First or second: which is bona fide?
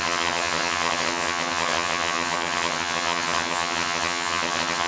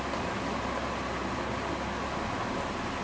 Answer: second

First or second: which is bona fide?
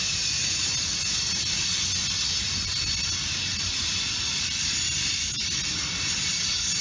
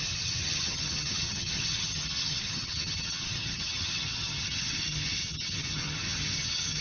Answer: first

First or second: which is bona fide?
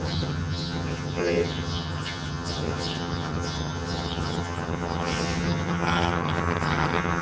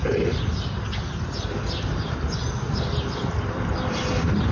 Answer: second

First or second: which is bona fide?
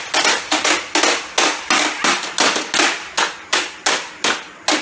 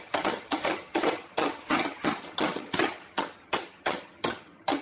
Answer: first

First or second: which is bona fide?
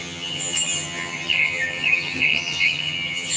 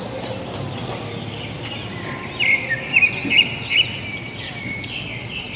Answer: second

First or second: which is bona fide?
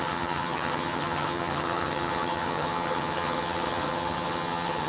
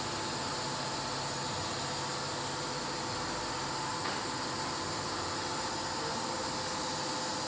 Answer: second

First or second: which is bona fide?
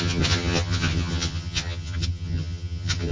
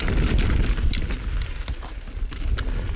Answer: second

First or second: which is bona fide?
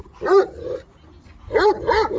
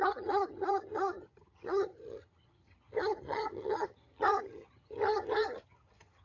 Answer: first